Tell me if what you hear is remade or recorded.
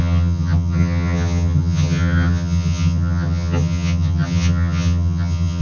remade